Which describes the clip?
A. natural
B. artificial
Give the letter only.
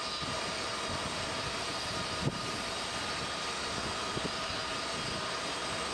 A